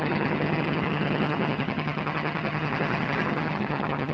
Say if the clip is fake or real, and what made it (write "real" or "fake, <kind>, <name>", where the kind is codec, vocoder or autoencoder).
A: fake, vocoder, HiFi-GAN